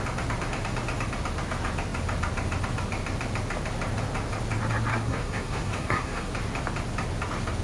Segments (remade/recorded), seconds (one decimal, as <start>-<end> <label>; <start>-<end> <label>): 0.0-4.9 recorded; 4.9-6.3 remade; 6.3-7.6 recorded

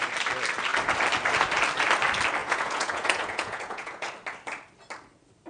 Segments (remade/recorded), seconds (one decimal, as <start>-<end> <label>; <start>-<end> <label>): 0.0-2.4 recorded; 2.4-4.1 remade; 4.1-5.5 recorded

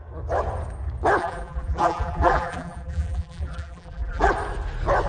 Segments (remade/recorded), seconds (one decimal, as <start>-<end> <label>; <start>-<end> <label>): 0.0-1.2 recorded; 1.2-4.3 remade; 4.3-5.1 recorded

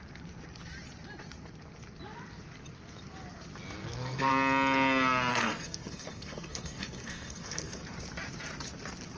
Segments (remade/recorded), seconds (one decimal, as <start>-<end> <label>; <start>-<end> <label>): 0.0-3.8 recorded; 3.8-4.3 remade; 4.3-5.3 recorded; 5.3-7.8 remade; 7.8-9.2 recorded

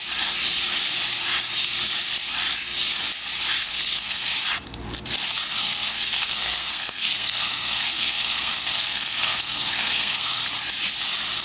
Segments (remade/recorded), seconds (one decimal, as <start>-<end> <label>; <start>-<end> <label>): 0.0-3.6 recorded; 3.6-4.3 remade; 4.3-5.5 recorded; 5.5-10.4 remade; 10.4-11.4 recorded

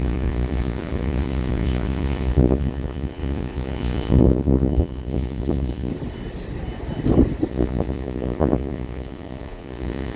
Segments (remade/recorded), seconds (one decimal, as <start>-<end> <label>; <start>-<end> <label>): 0.0-5.9 remade; 5.9-7.5 recorded; 7.5-10.2 remade